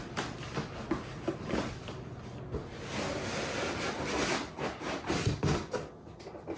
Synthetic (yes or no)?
no